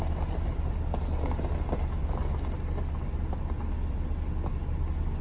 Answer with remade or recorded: recorded